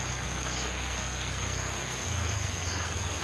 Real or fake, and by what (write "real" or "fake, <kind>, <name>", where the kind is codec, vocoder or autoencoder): fake, codec, SNAC